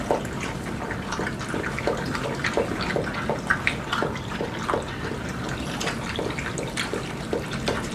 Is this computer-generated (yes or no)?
no